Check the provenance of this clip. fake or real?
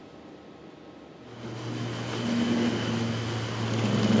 real